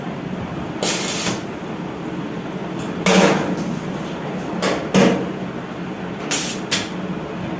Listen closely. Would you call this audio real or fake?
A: real